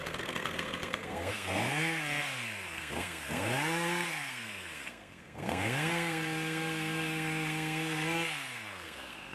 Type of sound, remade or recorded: remade